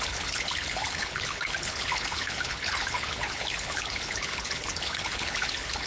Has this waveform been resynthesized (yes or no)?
yes